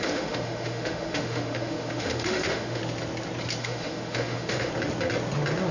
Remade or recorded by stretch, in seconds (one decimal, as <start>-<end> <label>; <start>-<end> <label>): 0.0-2.8 remade; 2.8-3.6 recorded; 3.6-4.7 remade; 4.7-5.7 recorded